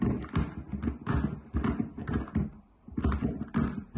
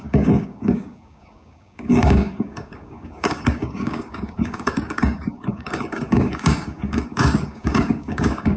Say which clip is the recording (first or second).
first